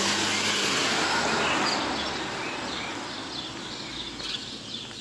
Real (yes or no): yes